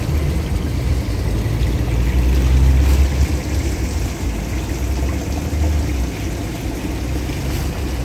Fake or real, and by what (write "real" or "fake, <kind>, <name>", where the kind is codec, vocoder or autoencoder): real